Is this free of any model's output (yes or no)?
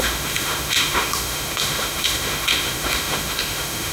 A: no